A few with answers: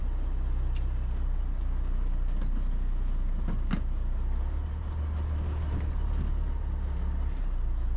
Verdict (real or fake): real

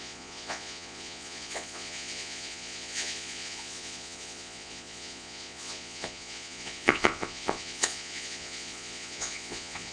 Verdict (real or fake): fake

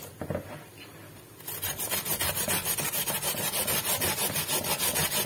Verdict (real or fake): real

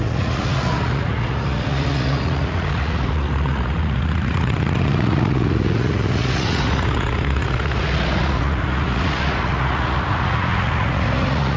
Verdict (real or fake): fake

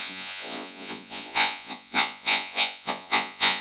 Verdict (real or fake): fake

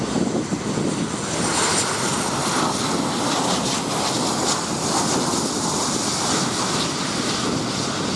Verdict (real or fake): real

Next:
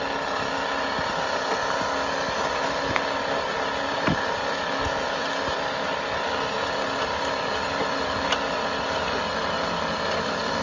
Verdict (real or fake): real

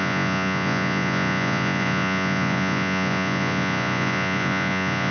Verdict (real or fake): fake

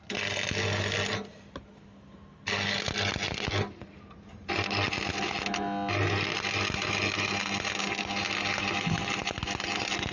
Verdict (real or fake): real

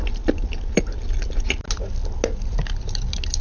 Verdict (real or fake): real